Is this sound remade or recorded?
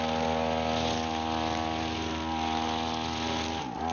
recorded